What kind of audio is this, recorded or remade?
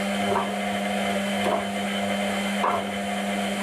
recorded